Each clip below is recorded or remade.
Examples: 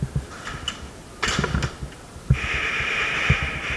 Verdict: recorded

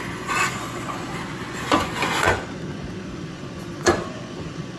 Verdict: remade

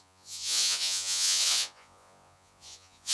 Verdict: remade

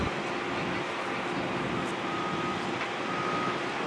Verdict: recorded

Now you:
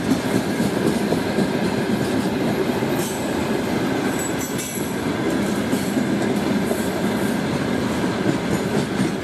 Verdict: recorded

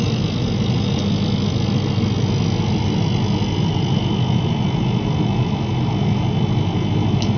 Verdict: recorded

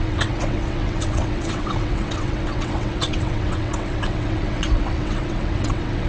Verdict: remade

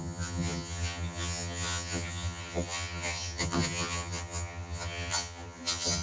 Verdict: remade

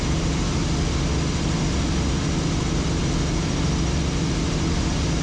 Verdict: recorded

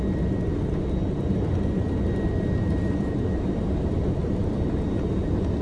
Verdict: recorded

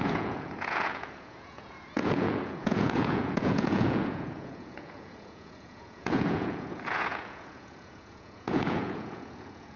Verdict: remade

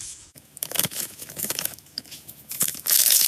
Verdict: remade